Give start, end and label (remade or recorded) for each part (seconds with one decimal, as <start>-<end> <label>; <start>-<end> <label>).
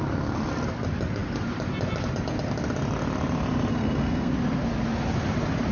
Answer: 0.0-3.7 recorded; 3.7-4.3 remade; 4.3-5.7 recorded